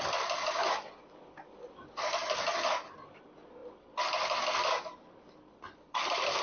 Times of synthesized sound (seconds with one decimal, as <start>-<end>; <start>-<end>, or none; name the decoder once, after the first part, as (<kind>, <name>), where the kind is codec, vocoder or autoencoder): none